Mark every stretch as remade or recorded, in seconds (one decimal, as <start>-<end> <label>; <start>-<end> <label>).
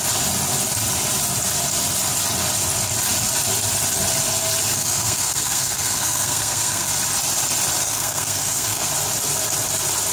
0.0-4.7 recorded; 4.7-6.9 remade; 6.9-7.8 recorded; 7.8-8.9 remade; 8.9-10.1 recorded